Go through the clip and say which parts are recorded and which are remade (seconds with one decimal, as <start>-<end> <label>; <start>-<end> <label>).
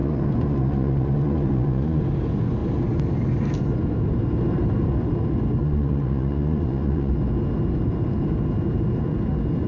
0.0-2.0 remade; 2.0-5.6 recorded; 5.6-7.1 remade; 7.1-9.7 recorded